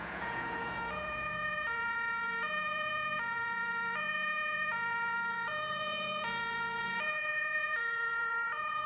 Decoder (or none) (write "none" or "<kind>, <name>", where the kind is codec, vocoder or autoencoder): vocoder, Vocos